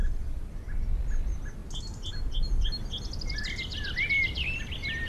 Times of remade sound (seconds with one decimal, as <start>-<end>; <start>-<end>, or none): 0.0-0.9